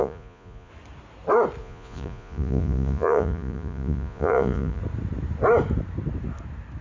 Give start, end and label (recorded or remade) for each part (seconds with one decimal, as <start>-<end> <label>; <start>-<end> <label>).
0.0-0.7 remade; 0.7-1.6 recorded; 1.6-4.8 remade; 4.8-6.8 recorded